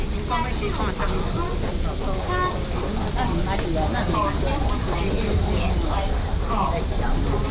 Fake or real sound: real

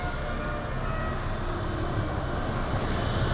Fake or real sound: real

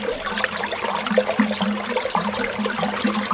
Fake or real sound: real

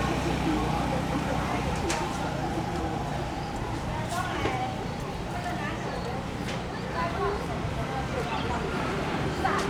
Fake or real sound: fake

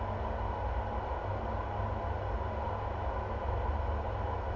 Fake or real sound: real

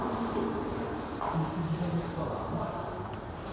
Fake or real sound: real